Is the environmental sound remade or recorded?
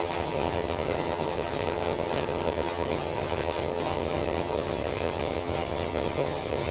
remade